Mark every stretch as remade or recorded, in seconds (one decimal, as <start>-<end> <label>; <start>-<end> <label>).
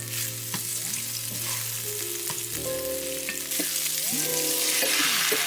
0.0-5.5 recorded